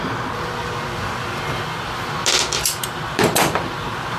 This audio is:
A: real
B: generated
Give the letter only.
A